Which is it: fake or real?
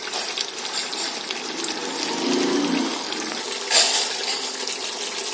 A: real